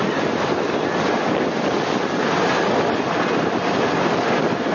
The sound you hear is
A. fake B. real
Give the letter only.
B